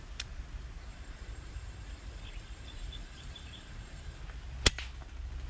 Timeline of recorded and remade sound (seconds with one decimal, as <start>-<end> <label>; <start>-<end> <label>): 0.0-0.9 recorded; 0.9-4.2 remade; 4.2-5.5 recorded

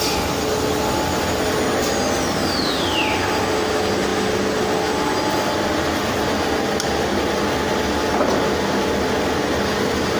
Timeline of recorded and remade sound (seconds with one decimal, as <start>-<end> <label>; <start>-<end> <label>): 0.0-10.2 recorded

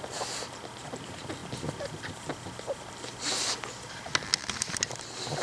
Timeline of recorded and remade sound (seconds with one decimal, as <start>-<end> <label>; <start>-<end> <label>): 0.0-5.4 recorded

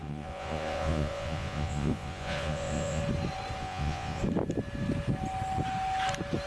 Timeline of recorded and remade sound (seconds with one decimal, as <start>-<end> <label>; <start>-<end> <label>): 0.0-3.0 remade; 3.0-3.6 recorded; 3.6-4.2 remade; 4.2-6.5 recorded

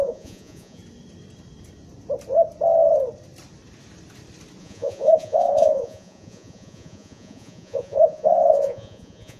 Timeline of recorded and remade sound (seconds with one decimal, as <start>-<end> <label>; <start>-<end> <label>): 0.0-0.8 remade; 0.8-4.6 recorded; 4.6-9.4 remade

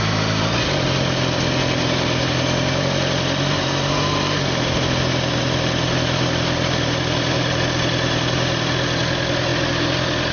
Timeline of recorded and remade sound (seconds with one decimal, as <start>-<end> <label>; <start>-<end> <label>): 0.0-10.3 recorded

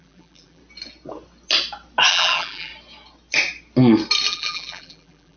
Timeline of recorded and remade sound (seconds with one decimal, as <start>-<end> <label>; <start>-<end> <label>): 0.0-0.6 remade; 0.6-2.1 recorded; 2.1-2.7 remade; 2.7-4.3 recorded; 4.3-5.4 remade